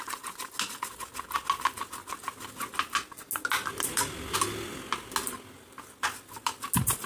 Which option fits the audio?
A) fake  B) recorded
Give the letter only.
B